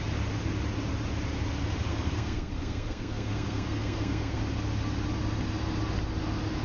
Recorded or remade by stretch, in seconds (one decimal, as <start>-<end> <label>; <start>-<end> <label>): 0.0-1.9 recorded; 1.9-4.4 remade; 4.4-6.6 recorded